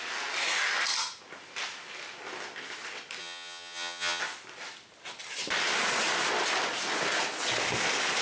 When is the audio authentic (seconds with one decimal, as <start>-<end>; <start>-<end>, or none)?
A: 0.0-3.2; 4.2-8.2